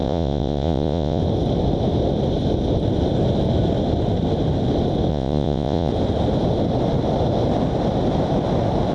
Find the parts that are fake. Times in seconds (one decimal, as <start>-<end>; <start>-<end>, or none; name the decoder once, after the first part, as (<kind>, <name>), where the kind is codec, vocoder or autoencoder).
0.0-1.2 (vocoder, Vocos); 5.1-5.9